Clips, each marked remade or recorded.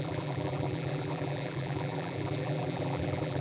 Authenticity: remade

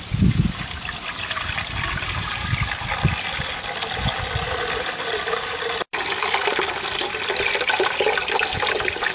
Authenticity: recorded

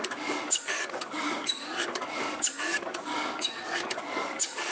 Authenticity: remade